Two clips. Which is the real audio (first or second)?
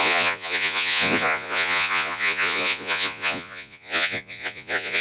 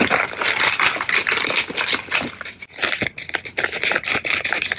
second